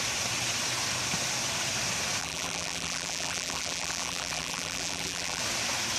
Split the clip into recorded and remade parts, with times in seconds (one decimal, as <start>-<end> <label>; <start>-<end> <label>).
0.0-2.2 recorded; 2.2-5.4 remade; 5.4-6.0 recorded